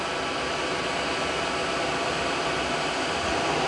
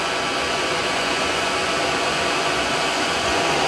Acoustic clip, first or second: first